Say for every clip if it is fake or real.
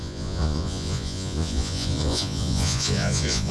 fake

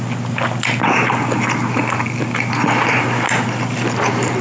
real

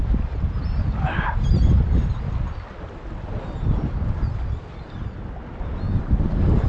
real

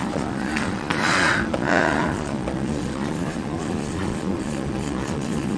fake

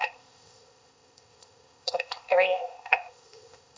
fake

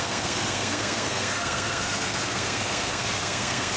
fake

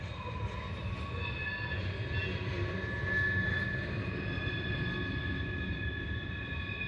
real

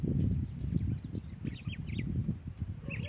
real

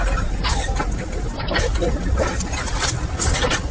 fake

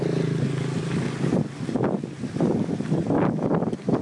real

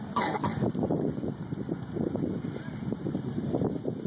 fake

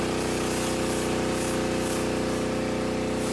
real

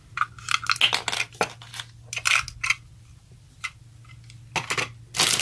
real